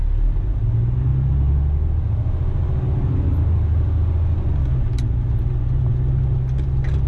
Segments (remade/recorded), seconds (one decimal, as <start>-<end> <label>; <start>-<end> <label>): 0.0-7.1 recorded